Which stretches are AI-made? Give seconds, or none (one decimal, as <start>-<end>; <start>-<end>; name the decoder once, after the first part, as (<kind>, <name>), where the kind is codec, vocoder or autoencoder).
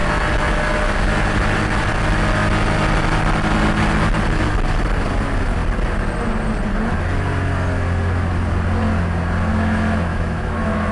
9.5-10.9 (autoencoder, DAC-VAE)